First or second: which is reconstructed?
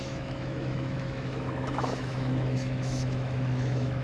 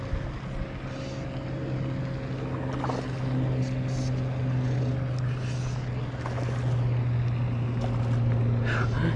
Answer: first